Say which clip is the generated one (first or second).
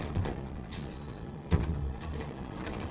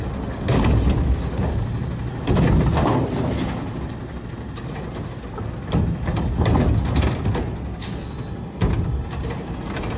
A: first